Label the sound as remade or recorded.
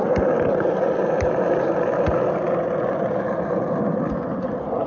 recorded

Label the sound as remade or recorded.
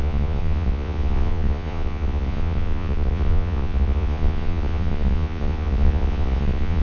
remade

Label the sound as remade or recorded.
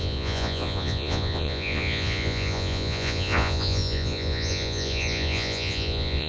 remade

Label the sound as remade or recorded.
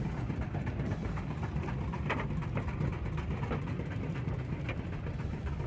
remade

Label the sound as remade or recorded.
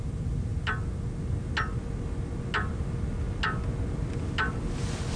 recorded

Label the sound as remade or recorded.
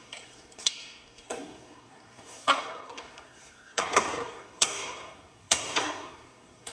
remade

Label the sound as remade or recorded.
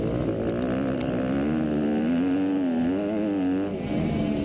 recorded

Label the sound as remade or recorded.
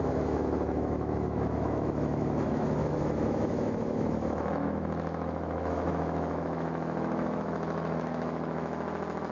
remade